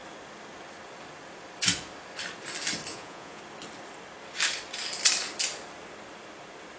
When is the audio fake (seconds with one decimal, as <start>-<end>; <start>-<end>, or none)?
2.9-3.4